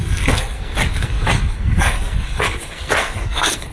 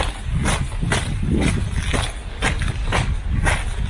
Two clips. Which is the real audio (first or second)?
second